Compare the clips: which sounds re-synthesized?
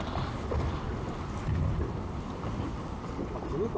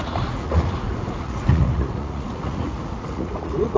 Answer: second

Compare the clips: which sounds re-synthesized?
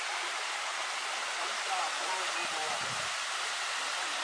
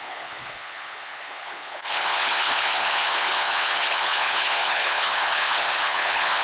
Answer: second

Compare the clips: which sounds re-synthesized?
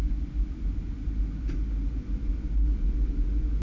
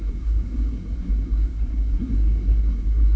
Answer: second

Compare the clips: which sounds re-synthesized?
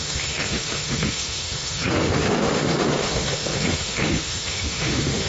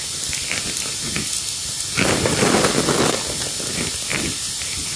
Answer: first